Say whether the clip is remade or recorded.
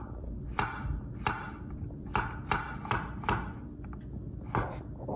recorded